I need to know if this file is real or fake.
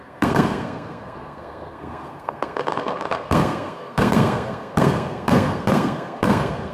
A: fake